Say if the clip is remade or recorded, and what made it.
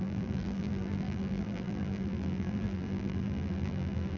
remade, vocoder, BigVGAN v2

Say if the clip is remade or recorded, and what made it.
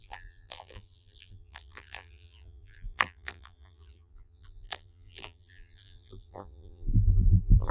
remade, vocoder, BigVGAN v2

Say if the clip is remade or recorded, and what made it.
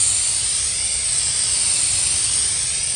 recorded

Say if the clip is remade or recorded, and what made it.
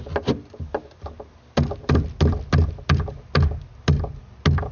recorded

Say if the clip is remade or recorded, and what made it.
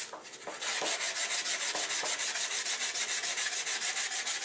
recorded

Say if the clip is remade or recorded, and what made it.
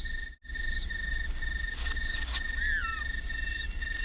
recorded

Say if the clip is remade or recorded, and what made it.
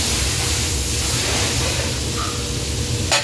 recorded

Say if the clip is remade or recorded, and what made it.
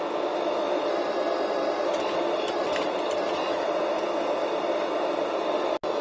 recorded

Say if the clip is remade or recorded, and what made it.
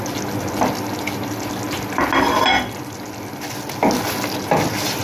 recorded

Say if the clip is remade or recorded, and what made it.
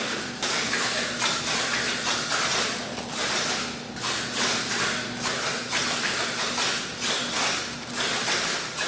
recorded